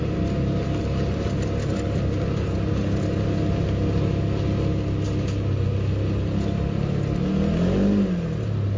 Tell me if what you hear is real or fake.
real